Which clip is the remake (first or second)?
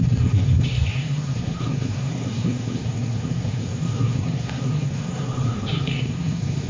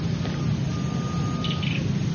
first